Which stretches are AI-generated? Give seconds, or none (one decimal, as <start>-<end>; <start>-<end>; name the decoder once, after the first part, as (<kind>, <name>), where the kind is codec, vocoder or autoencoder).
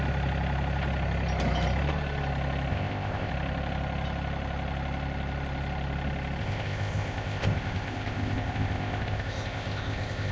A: 2.7-3.3 (codec, ZipCodec); 6.4-10.3